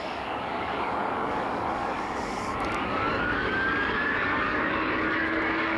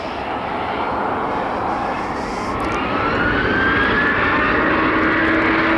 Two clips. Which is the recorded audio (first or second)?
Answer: second